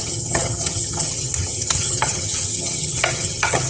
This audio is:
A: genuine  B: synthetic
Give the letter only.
B